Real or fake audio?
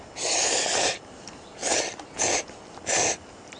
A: fake